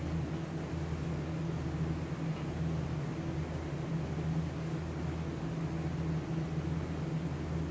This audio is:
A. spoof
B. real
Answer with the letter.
B